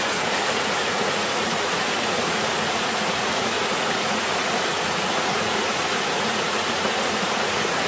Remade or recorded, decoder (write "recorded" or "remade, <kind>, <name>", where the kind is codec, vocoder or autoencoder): remade, vocoder, Vocos